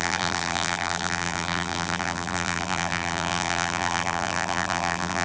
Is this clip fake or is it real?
fake